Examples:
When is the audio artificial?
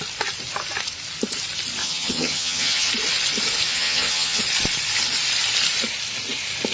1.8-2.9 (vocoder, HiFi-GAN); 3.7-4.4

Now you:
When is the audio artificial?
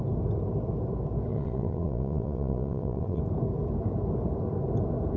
1.3-3.2 (vocoder, Vocos)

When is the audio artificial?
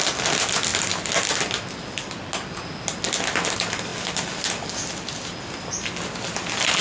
none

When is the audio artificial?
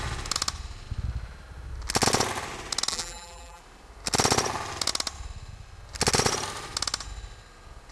2.9-3.6 (vocoder, BigVGAN v2)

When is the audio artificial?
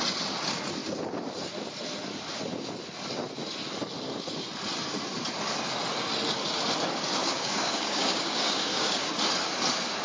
7.2-9.1 (codec, DAC)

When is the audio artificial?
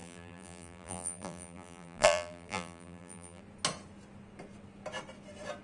0.0-3.4 (vocoder, BigVGAN v2)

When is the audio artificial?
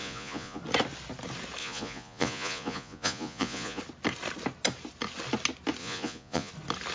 0.0-0.6 (vocoder, Vocos); 1.6-3.8; 5.8-6.5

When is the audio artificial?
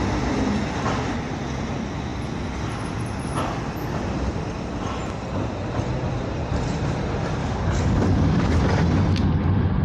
7.4-8.6 (codec, DAC)